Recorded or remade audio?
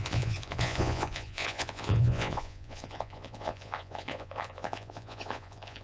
remade